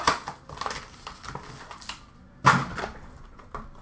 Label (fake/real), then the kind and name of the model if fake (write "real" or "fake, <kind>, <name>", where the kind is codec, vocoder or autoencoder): real